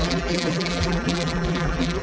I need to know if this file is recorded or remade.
remade